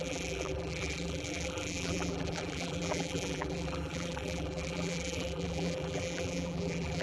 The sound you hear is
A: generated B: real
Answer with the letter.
A